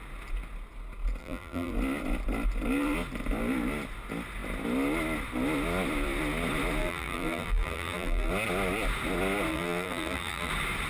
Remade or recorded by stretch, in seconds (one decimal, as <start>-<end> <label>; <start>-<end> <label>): 0.0-1.2 recorded; 1.2-1.7 remade; 1.7-6.8 recorded; 6.8-8.3 remade; 8.3-9.5 recorded; 9.5-10.5 remade; 10.5-10.9 recorded